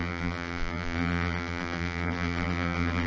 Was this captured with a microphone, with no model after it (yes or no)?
no